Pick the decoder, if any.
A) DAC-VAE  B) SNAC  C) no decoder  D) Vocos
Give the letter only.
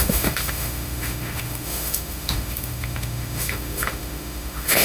A